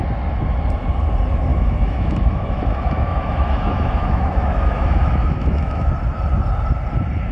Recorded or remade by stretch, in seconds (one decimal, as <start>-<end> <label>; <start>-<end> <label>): 0.0-1.5 recorded; 1.5-5.9 remade; 5.9-7.3 recorded